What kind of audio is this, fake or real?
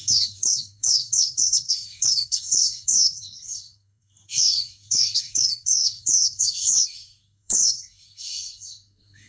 fake